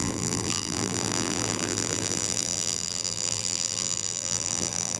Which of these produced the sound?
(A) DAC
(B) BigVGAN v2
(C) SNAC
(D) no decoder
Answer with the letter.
B